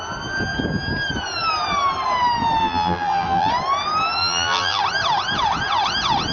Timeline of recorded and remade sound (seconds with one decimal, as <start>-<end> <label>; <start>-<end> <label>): 0.0-2.6 recorded; 2.6-3.5 remade; 3.5-4.2 recorded; 4.2-4.8 remade; 4.8-6.3 recorded